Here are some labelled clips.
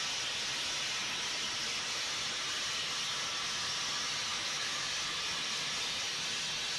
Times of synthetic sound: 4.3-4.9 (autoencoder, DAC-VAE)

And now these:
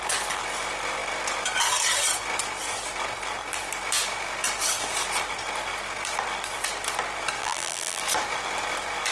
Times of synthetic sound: 7.4-8.0 (vocoder, BigVGAN v2)

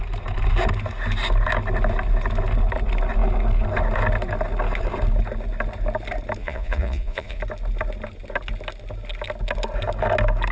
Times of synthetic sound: 6.4-7.4 (vocoder, Vocos)

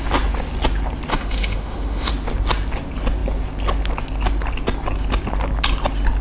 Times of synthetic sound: 1.1-2.1 (autoencoder, DAC-VAE)